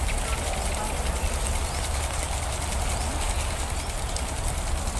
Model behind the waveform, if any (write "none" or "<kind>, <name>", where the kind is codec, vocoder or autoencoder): none